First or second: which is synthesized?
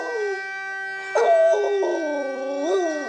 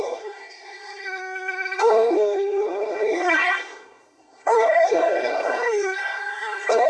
second